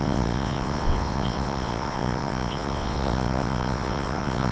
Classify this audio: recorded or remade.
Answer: remade